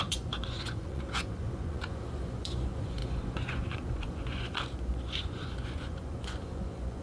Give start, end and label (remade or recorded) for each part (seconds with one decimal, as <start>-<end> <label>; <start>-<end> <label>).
0.0-7.0 remade